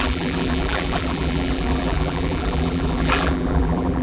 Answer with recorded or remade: remade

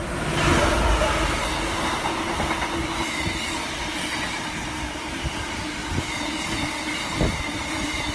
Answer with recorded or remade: recorded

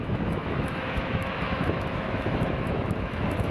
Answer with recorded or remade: remade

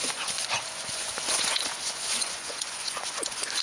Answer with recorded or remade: remade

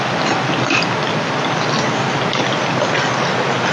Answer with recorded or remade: recorded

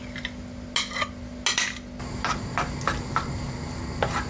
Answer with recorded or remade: recorded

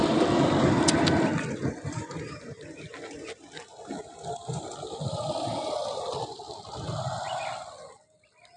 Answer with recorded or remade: recorded